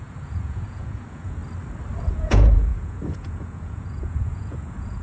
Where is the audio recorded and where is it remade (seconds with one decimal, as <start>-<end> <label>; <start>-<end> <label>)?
0.0-1.4 remade; 1.4-2.1 recorded; 2.1-5.0 remade

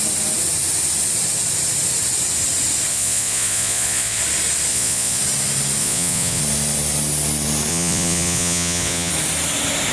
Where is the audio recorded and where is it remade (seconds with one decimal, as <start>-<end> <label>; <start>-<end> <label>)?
0.0-2.9 recorded; 2.9-4.2 remade; 4.2-4.7 recorded; 4.7-5.2 remade; 5.2-5.8 recorded; 5.8-6.4 remade; 6.4-7.7 recorded; 7.7-9.1 remade; 9.1-9.9 recorded

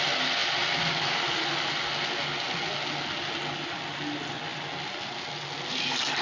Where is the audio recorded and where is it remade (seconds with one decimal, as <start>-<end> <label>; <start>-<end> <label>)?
0.0-6.2 recorded